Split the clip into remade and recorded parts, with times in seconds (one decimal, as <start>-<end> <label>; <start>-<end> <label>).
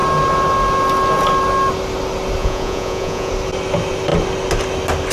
0.0-2.4 recorded; 2.4-3.3 remade; 3.3-5.1 recorded